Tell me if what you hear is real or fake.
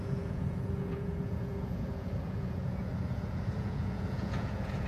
fake